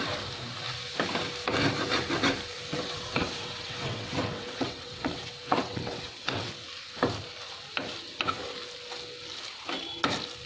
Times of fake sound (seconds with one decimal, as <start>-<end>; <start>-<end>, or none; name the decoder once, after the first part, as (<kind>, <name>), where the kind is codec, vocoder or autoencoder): 2.7-6.5 (vocoder, WaveNeXt)